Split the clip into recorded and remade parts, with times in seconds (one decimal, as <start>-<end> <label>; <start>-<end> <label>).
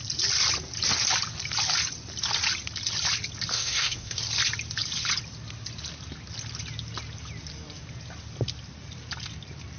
0.0-3.5 recorded; 3.5-4.2 remade; 4.2-9.8 recorded